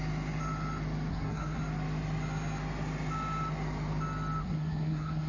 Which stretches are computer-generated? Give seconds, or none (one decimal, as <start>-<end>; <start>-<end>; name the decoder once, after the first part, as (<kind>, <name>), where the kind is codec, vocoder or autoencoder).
1.1-1.6 (codec, SNAC); 4.4-5.3